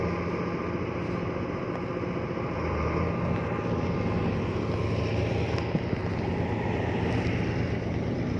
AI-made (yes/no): no